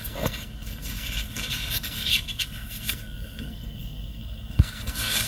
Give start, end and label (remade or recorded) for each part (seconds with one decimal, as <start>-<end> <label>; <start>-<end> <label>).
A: 0.0-5.3 remade